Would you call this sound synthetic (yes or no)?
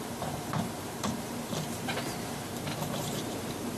yes